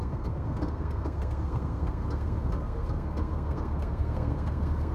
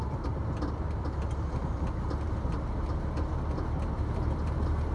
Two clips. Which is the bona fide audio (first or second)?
second